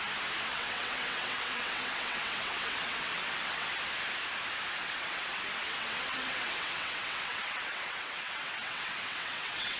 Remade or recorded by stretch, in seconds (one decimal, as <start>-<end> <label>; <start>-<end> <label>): 0.0-0.5 recorded; 0.5-3.7 remade; 3.7-4.8 recorded; 4.8-9.8 remade